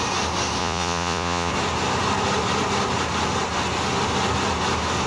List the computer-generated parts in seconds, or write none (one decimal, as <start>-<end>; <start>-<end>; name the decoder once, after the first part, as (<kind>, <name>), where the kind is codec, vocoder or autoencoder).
0.6-1.5 (vocoder, Vocos)